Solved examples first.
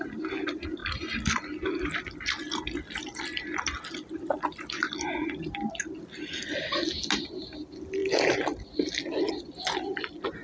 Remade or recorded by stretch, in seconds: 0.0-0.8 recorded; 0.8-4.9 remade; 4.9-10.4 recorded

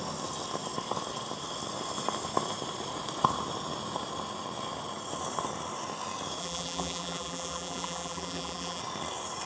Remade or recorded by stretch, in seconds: 0.0-6.4 recorded; 6.4-8.8 remade; 8.8-9.5 recorded

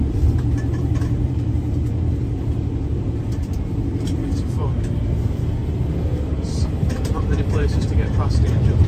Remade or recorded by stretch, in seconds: 0.0-5.6 remade; 5.6-6.2 recorded; 6.2-8.9 remade

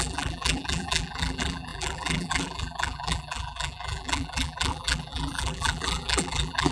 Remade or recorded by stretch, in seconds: 0.0-6.7 remade

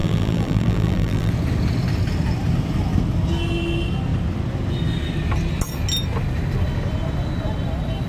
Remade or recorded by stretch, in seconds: 0.0-1.3 remade; 1.3-8.1 recorded

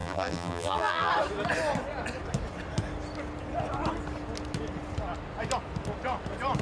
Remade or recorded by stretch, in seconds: 0.0-1.1 remade; 1.1-6.6 recorded

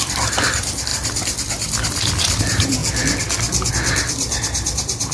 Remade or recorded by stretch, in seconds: 0.0-2.8 remade; 2.8-3.7 recorded; 3.7-5.1 remade

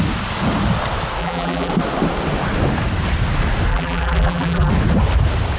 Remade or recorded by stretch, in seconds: 0.0-1.2 recorded; 1.2-1.7 remade; 1.7-3.7 recorded; 3.7-4.7 remade; 4.7-5.6 recorded